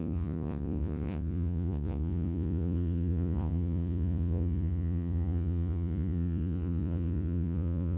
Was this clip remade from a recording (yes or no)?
yes